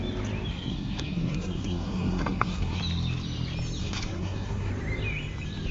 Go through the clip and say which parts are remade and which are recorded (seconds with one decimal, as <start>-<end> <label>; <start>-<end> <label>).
0.0-0.5 recorded; 0.5-2.8 remade; 2.8-3.8 recorded; 3.8-4.7 remade; 4.7-5.7 recorded